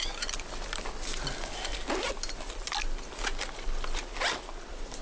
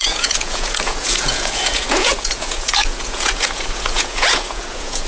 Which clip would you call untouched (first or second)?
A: first